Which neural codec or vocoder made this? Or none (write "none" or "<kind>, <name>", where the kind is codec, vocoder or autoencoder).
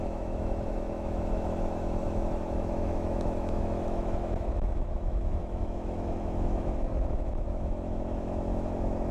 autoencoder, DAC-VAE